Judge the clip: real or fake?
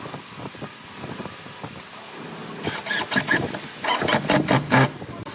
real